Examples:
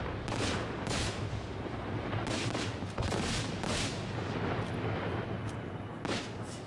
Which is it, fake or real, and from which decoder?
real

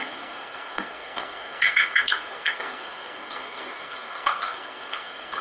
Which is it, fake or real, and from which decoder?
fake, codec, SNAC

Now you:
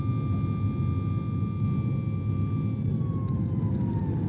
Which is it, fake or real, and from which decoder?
real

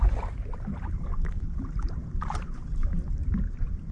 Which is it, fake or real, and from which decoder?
fake, vocoder, BigVGAN v2